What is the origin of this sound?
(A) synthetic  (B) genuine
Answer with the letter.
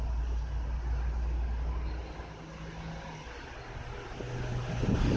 B